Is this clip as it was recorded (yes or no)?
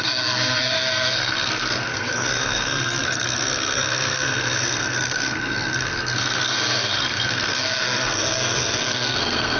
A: no